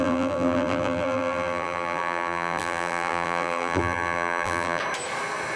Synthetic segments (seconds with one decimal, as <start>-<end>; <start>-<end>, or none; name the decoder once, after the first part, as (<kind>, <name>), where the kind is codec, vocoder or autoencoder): 0.0-4.8 (vocoder, BigVGAN v2)